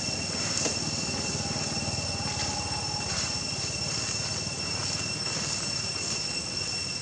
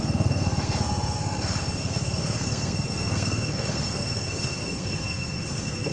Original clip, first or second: first